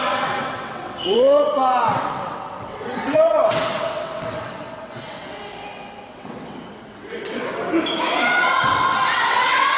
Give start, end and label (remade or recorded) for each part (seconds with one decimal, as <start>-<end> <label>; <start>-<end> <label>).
0.0-5.5 remade; 5.5-6.1 recorded; 6.1-7.5 remade; 7.5-8.4 recorded; 8.4-9.8 remade